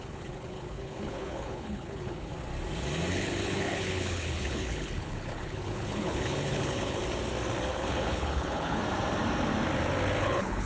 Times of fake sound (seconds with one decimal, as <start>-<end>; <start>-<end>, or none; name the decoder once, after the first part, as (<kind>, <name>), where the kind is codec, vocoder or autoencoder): 0.0-2.3 (codec, HILCodec); 3.1-7.0; 7.7-8.8; 10.2-10.7